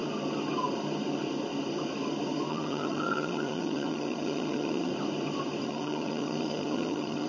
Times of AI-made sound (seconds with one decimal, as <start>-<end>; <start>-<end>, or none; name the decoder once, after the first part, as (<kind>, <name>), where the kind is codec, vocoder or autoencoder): 2.5-4.9 (vocoder, HiFi-GAN); 5.6-7.3